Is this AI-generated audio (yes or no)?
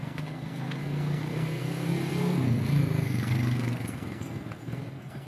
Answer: yes